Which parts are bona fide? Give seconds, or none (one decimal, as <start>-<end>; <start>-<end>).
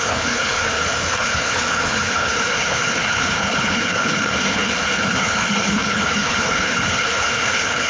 none